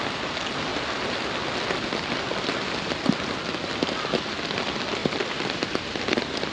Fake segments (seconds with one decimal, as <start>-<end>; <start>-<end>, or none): 5.0-6.1